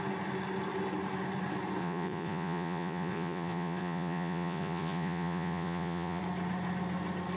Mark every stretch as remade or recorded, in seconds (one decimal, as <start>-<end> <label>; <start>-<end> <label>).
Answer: 0.0-1.8 recorded; 1.8-6.2 remade; 6.2-7.4 recorded

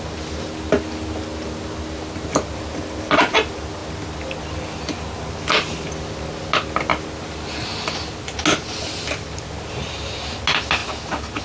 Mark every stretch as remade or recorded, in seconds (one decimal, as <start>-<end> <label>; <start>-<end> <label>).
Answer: 0.0-11.4 recorded

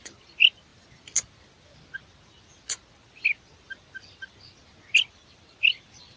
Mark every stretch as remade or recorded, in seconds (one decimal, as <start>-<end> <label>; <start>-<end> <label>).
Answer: 0.0-6.2 recorded